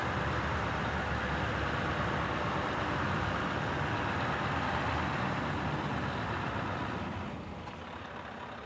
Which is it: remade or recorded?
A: recorded